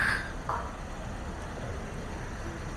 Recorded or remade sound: recorded